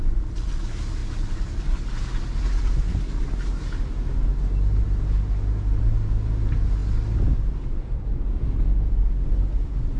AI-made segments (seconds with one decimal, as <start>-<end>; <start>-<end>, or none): none